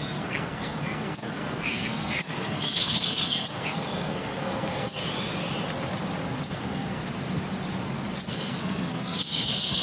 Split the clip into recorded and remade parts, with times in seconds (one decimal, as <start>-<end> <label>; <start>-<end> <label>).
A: 0.0-5.0 remade; 5.0-6.5 recorded; 6.5-7.0 remade; 7.0-8.3 recorded; 8.3-9.8 remade